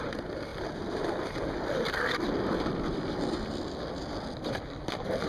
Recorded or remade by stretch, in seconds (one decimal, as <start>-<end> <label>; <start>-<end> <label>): 0.0-0.5 recorded; 0.5-3.7 remade; 3.7-5.3 recorded

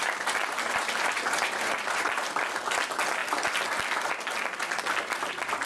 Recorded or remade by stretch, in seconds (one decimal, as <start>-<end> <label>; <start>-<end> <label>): 0.0-2.1 remade; 2.1-5.7 recorded

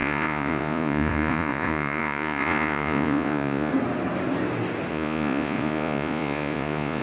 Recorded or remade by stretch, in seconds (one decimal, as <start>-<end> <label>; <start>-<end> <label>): 0.0-3.7 remade; 3.7-4.9 recorded; 4.9-7.0 remade

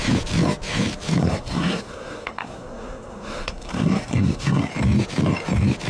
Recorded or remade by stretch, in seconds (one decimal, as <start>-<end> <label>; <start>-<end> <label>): 0.0-1.2 recorded; 1.2-4.7 remade; 4.7-5.9 recorded

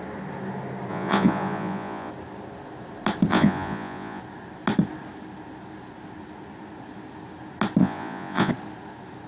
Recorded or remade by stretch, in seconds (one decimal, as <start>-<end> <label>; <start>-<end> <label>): 0.0-0.9 recorded; 0.9-2.1 remade; 2.1-3.3 recorded; 3.3-4.2 remade; 4.2-7.8 recorded; 7.8-8.5 remade; 8.5-9.3 recorded

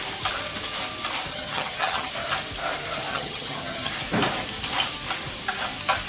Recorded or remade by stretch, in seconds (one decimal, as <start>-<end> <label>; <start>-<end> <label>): 0.0-1.3 recorded; 1.3-2.1 remade; 2.1-3.1 recorded; 3.1-3.9 remade; 3.9-6.1 recorded

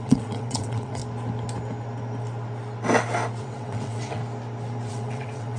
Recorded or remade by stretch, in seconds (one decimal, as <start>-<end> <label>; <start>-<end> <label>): 0.0-1.0 remade; 1.0-3.4 recorded; 3.4-4.2 remade; 4.2-4.9 recorded; 4.9-5.6 remade